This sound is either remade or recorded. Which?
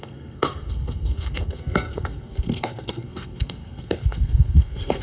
remade